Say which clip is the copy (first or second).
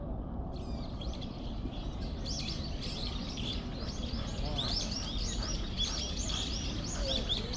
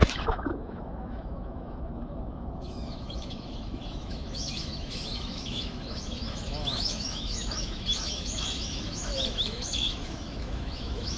second